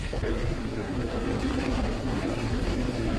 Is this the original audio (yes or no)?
no